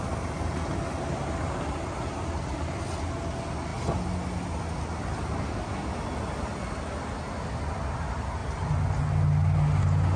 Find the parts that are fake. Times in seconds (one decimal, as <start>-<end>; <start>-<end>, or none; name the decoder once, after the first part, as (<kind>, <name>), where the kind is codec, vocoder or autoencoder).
none